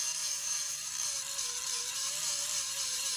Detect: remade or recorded remade